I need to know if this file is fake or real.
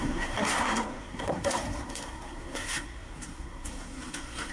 fake